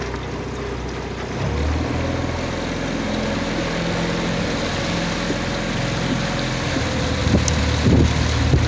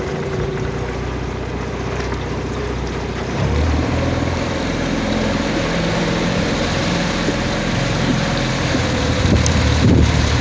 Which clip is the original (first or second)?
first